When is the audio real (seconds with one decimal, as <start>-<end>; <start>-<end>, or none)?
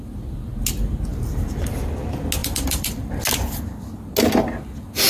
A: 0.0-1.1; 1.9-2.4; 3.2-5.1